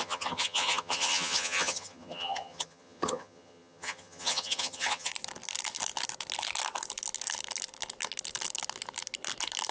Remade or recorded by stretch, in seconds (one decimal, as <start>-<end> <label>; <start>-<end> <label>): 0.0-5.1 remade; 5.1-9.7 recorded